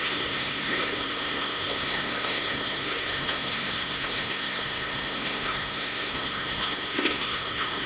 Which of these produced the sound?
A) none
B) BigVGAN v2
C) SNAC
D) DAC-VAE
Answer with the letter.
C